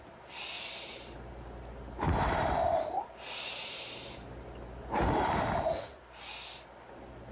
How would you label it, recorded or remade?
recorded